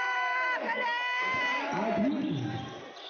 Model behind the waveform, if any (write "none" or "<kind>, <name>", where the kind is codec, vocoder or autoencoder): none